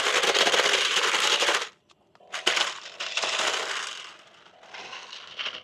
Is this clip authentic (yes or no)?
yes